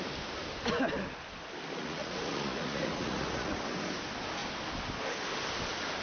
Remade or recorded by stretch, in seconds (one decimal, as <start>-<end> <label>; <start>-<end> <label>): 0.0-1.8 recorded; 1.8-3.5 remade; 3.5-6.0 recorded